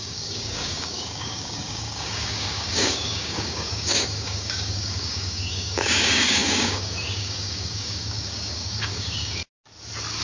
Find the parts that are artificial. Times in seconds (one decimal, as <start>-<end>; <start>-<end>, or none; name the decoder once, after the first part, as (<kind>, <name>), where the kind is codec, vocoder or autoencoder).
0.0-9.4 (codec, DAC)